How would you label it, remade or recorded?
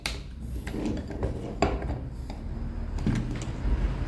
recorded